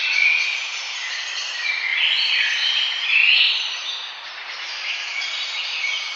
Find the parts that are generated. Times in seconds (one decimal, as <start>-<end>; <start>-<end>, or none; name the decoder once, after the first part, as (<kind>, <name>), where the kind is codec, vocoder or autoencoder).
0.7-1.5 (vocoder, BigVGAN v2); 1.9-3.5; 4.4-5.2